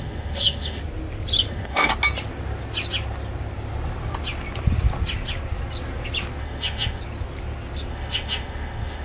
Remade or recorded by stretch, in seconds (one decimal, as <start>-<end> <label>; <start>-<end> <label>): 0.0-0.8 remade; 0.8-1.5 recorded; 1.5-1.9 remade; 1.9-6.4 recorded; 6.4-7.0 remade; 7.0-7.9 recorded; 7.9-9.0 remade